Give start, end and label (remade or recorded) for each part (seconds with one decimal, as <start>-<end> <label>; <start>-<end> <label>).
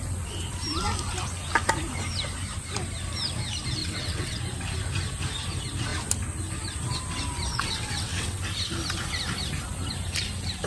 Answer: 0.0-3.8 recorded; 3.8-4.4 remade; 4.4-7.5 recorded; 7.5-8.4 remade; 8.4-10.7 recorded